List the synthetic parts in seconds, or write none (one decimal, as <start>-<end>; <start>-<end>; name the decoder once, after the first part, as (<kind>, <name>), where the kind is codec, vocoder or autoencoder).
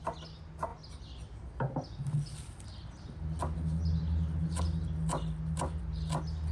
none